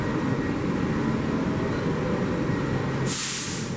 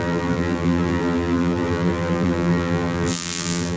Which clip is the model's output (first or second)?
second